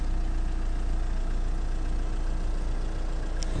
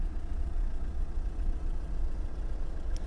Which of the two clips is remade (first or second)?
second